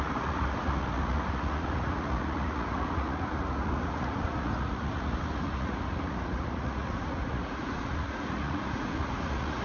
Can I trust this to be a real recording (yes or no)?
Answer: no